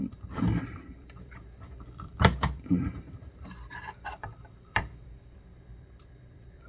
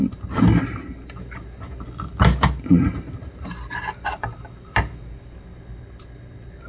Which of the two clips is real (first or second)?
second